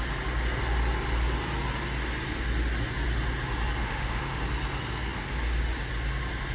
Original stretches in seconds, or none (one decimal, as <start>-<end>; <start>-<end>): 0.0-3.8; 4.4-6.5